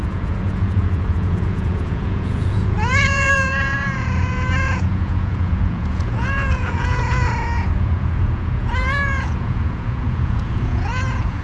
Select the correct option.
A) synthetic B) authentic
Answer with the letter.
A